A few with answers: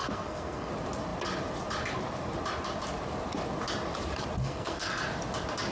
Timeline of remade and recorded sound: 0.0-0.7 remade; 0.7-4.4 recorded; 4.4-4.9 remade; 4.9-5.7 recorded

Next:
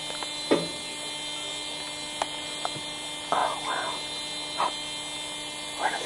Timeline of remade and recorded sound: 0.0-6.1 recorded

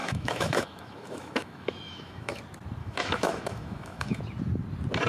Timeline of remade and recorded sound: 0.0-2.4 remade; 2.4-2.8 recorded; 2.8-4.2 remade; 4.2-5.1 recorded